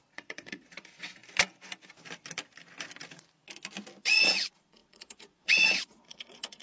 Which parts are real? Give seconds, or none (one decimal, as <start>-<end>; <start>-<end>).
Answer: 1.2-4.0